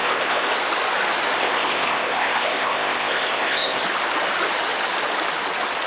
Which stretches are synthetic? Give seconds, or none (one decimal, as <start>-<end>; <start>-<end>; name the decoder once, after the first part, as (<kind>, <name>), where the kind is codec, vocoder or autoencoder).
0.0-0.5 (codec, ZipCodec); 1.4-3.8